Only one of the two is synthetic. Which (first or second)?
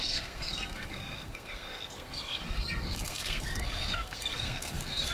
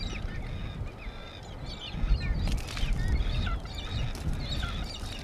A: first